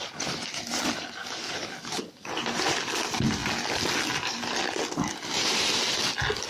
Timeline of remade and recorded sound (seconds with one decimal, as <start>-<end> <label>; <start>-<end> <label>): 0.0-1.2 recorded; 1.2-2.3 remade; 2.3-6.5 recorded